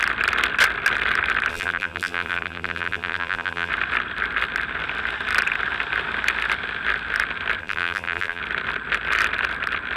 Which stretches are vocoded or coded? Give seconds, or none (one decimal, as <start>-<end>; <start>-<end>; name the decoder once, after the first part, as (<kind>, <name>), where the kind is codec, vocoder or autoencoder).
1.5-3.7 (vocoder, BigVGAN v2); 7.6-8.4